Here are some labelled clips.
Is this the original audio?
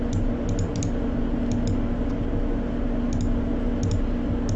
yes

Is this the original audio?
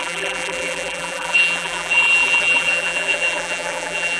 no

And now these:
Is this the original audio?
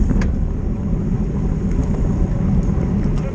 yes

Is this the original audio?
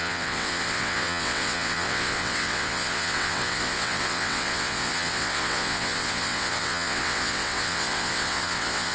no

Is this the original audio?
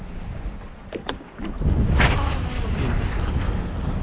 yes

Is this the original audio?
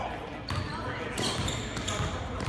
yes